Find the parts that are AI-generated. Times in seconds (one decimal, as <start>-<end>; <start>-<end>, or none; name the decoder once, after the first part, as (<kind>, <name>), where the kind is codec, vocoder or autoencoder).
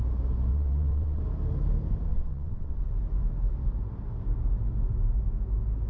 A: 0.5-1.2 (vocoder, WaveNeXt); 2.1-2.8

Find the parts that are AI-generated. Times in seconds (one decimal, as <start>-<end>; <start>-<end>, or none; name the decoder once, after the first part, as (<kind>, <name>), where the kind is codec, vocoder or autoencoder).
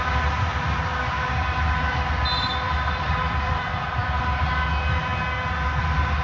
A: 0.5-4.2 (vocoder, BigVGAN v2)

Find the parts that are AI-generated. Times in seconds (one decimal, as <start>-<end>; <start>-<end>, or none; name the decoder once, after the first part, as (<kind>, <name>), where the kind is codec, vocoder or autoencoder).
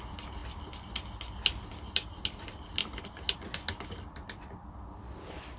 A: none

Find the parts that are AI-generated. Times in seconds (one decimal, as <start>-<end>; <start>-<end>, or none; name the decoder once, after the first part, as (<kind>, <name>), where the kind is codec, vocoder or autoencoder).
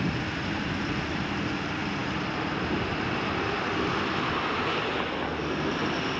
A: none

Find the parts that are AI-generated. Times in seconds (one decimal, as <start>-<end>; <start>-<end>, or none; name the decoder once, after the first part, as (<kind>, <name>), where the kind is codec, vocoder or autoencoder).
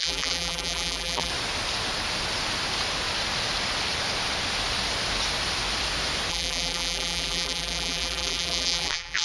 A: 0.0-1.3 (vocoder, BigVGAN v2); 6.3-9.2